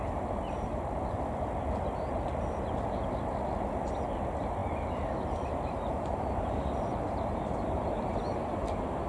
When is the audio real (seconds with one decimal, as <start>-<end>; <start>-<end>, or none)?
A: 0.0-5.9